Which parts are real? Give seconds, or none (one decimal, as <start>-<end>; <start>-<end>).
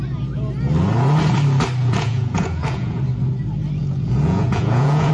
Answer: 0.0-1.8; 3.0-3.8